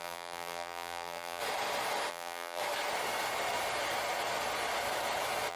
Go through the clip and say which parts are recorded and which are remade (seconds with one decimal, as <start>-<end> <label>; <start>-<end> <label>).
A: 0.0-1.4 remade; 1.4-2.1 recorded; 2.1-2.6 remade; 2.6-5.5 recorded